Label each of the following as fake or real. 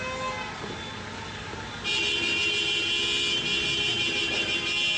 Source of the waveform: real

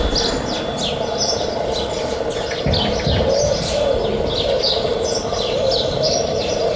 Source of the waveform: real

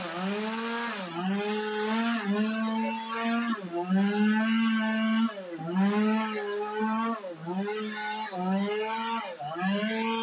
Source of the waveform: real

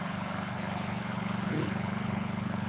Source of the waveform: fake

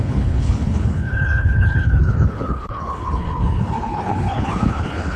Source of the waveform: fake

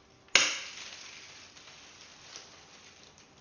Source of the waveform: real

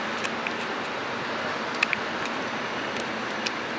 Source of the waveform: real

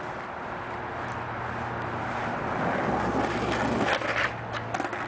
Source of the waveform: real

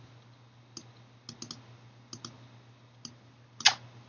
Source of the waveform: real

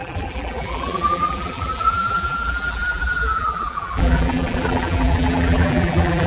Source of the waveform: fake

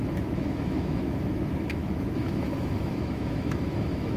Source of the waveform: fake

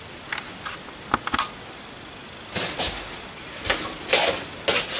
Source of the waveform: real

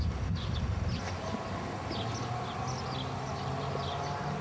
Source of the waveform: real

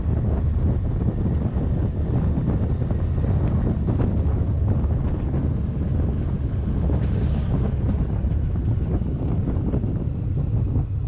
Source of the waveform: real